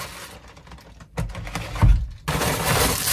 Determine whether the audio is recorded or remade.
recorded